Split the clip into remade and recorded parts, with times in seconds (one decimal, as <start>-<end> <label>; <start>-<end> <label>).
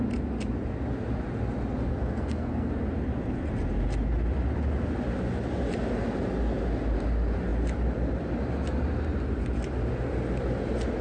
0.0-1.9 recorded; 1.9-2.7 remade; 2.7-11.0 recorded